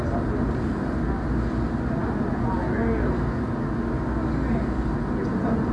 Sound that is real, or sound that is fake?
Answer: real